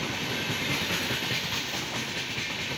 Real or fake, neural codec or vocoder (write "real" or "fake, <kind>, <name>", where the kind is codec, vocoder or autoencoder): real